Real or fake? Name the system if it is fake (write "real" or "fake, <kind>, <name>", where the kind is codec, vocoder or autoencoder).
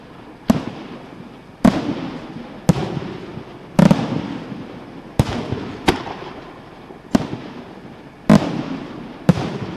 real